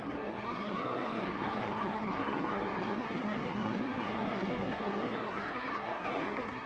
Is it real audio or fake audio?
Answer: fake